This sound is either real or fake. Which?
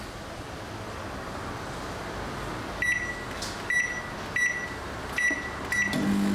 real